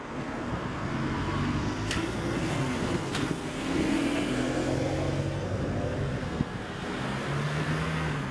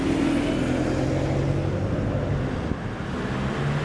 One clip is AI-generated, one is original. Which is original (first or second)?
second